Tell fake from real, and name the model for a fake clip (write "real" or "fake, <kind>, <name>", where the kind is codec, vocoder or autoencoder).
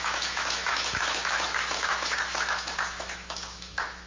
fake, autoencoder, DAC-VAE